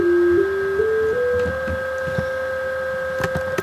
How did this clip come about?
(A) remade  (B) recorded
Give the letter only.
B